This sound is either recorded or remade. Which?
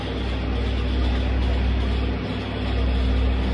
recorded